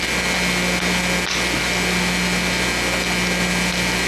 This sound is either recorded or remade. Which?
recorded